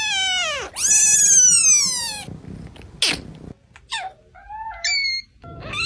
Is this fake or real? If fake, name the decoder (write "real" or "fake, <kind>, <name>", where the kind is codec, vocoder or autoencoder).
real